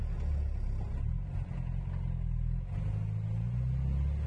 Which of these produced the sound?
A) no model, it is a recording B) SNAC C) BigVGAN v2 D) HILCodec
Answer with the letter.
A